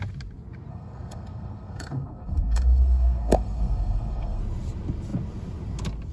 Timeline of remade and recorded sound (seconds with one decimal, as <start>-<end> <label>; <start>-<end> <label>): 0.0-0.7 recorded; 0.7-4.4 remade; 4.4-6.1 recorded